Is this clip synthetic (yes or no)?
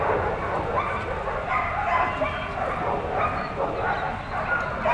no